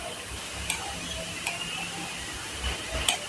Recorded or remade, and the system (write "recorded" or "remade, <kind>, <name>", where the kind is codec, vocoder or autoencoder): recorded